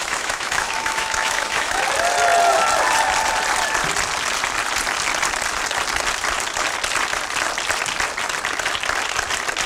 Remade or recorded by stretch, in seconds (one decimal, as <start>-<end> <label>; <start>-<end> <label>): 0.0-1.8 remade; 1.8-9.7 recorded

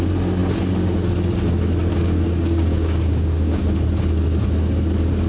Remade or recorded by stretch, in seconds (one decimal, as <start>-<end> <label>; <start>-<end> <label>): 0.0-1.9 recorded; 1.9-3.6 remade; 3.6-5.3 recorded